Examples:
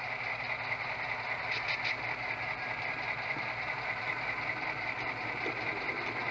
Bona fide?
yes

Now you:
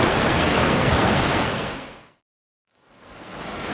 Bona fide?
no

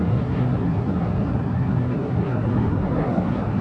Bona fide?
no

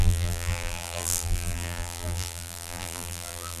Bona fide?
no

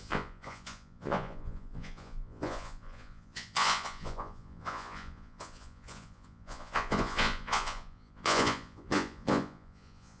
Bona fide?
no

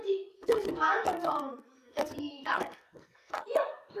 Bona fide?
no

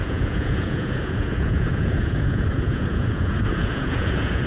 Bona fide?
no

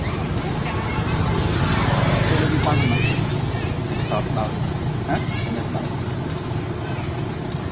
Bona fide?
yes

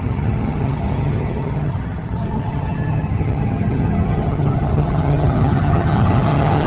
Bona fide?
no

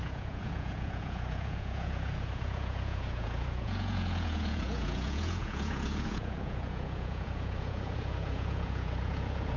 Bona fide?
no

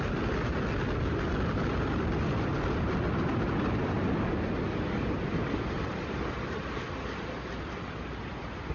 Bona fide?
yes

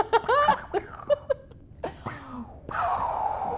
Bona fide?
yes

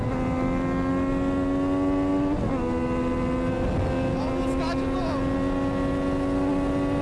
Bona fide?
yes